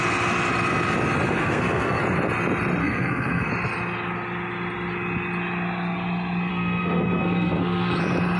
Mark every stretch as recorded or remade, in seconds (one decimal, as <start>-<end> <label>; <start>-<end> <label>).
0.0-1.4 recorded; 1.4-2.0 remade; 2.0-2.8 recorded; 2.8-3.5 remade; 3.5-6.5 recorded; 6.5-8.0 remade; 8.0-8.4 recorded